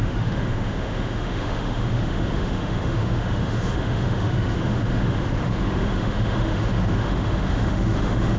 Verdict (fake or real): fake